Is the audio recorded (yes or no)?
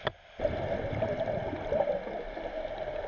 yes